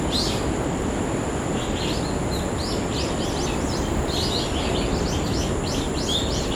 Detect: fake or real real